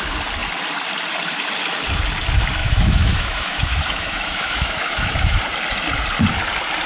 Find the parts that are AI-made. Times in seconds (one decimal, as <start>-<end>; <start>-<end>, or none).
2.6-5.4